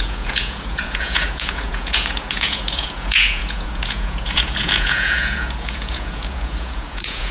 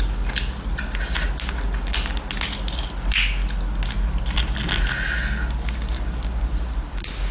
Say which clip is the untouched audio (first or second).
second